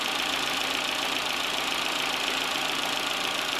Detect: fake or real real